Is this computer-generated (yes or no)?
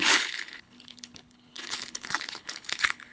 yes